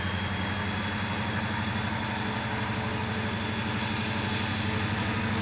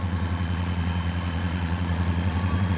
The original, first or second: first